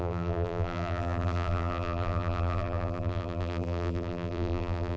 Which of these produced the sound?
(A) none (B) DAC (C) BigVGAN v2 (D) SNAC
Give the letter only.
C